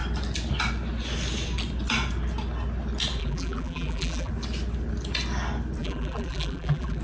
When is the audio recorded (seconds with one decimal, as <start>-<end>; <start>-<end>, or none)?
0.0-3.2; 4.3-5.8